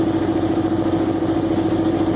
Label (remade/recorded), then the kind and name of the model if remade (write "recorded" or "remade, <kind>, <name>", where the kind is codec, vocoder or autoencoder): recorded